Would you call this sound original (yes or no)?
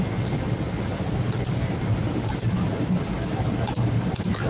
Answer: yes